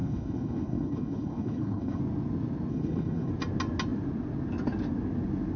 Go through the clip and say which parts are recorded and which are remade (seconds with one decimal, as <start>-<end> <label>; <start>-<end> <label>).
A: 0.0-2.0 remade; 2.0-2.7 recorded; 2.7-3.3 remade; 3.3-5.6 recorded